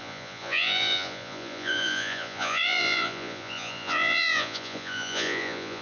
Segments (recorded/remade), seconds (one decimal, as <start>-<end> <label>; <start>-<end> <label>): 0.0-5.8 remade